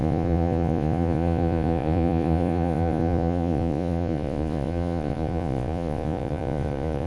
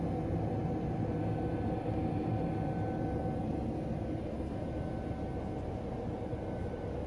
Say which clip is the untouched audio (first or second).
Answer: second